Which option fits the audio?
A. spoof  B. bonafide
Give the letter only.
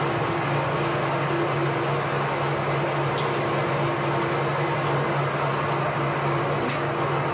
B